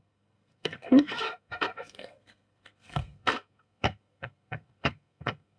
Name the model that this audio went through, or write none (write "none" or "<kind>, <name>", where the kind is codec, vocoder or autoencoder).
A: codec, SNAC